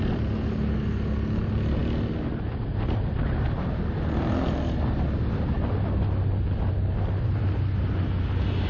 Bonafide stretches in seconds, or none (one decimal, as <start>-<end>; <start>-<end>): 0.0-8.7